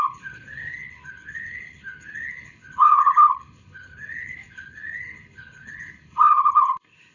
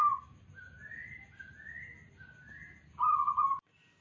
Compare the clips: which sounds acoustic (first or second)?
second